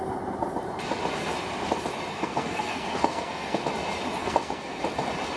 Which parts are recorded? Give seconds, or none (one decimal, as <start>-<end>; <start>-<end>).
0.0-2.1; 3.6-4.2; 4.8-5.4